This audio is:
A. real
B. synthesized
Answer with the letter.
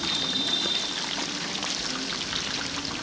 A